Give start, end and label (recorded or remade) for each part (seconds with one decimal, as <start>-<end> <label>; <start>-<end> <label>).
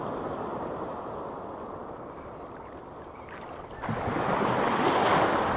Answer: 0.0-5.6 recorded